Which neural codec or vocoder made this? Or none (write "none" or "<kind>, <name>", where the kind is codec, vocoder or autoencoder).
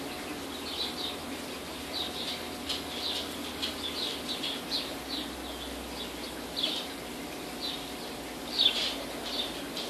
none